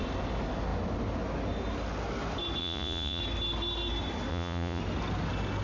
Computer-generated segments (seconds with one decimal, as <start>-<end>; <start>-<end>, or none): 2.6-3.2; 4.3-4.8